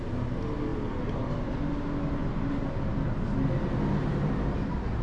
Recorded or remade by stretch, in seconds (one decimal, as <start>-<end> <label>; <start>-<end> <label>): 0.0-5.0 recorded